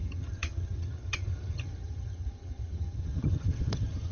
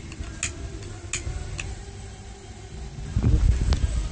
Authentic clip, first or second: second